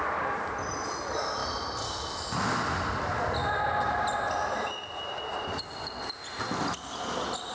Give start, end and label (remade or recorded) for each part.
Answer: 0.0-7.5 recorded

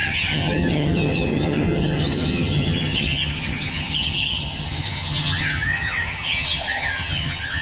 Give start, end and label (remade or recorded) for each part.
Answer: 0.0-7.6 remade